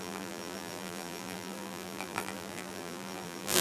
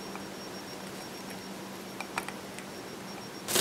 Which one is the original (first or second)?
second